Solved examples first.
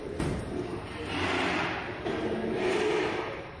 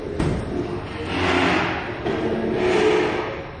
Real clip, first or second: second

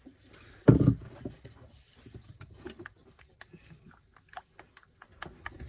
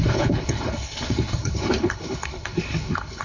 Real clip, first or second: first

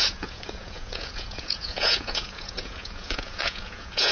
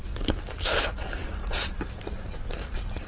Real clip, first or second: second